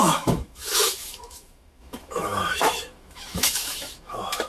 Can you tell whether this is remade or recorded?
remade